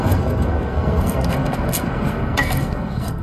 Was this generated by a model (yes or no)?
yes